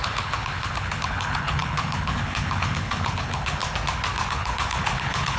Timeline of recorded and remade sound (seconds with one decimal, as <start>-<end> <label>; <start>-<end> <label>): 0.0-3.6 remade; 3.6-4.3 recorded; 4.3-5.4 remade